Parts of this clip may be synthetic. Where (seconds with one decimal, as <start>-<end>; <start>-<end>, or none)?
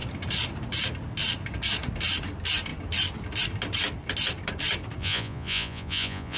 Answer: 5.0-6.4